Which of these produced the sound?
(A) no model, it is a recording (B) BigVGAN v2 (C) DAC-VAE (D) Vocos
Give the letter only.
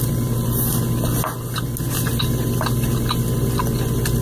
A